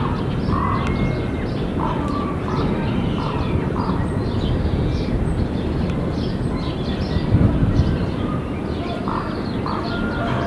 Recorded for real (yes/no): yes